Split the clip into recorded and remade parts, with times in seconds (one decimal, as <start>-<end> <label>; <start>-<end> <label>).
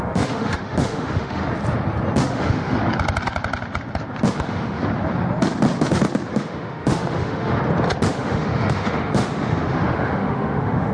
0.0-1.4 remade; 1.4-2.3 recorded; 2.3-2.8 remade; 2.8-4.3 recorded; 4.3-4.8 remade; 4.8-6.3 recorded; 6.3-7.6 remade; 7.6-8.1 recorded; 8.1-10.9 remade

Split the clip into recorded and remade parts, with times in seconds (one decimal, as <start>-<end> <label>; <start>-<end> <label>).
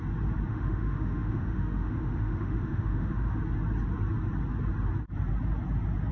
0.0-0.5 recorded; 0.5-3.4 remade; 3.4-6.1 recorded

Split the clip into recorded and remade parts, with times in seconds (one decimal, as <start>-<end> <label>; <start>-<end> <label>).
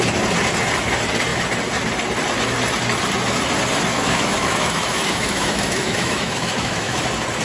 0.0-3.9 recorded; 3.9-7.0 remade; 7.0-7.4 recorded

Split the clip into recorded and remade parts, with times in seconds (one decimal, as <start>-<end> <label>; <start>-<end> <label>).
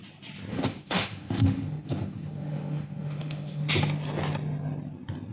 0.0-0.5 recorded; 0.5-3.7 remade; 3.7-5.3 recorded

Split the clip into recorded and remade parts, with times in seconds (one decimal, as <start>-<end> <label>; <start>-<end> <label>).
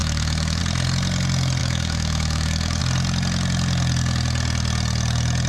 0.0-0.6 remade; 0.6-1.6 recorded; 1.6-2.8 remade; 2.8-5.5 recorded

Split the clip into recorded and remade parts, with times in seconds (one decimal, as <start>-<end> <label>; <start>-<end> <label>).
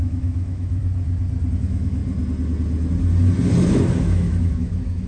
0.0-0.8 remade; 0.8-1.6 recorded; 1.6-2.0 remade; 2.0-4.0 recorded; 4.0-5.1 remade